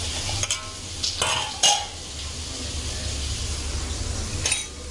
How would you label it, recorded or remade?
recorded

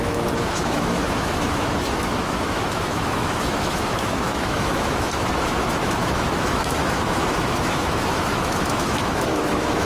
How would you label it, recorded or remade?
remade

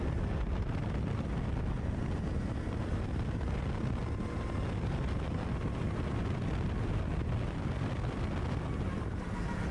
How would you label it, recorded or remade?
recorded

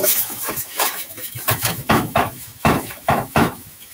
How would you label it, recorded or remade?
remade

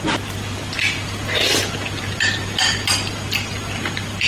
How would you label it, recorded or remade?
recorded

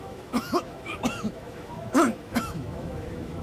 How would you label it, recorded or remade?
remade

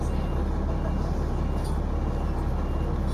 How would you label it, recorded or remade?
recorded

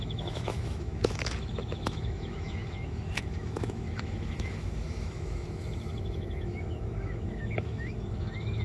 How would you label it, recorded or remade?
remade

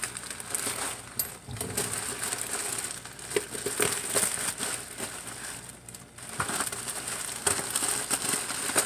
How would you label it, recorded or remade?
recorded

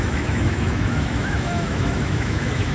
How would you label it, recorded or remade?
remade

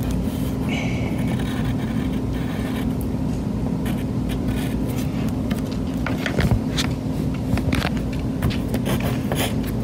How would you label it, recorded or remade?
recorded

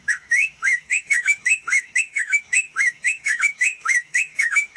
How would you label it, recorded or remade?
remade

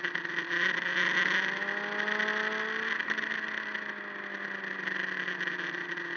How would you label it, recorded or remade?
recorded